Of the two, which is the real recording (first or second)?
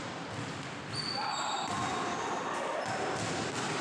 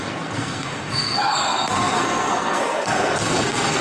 first